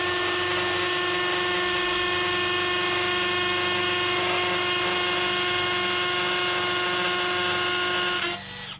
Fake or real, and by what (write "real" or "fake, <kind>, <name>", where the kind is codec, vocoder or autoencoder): real